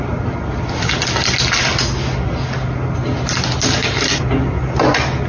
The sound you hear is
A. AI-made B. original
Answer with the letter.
B